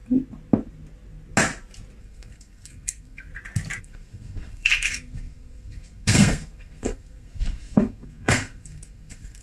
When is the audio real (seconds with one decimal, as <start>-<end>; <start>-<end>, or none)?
0.0-2.0; 3.3-3.8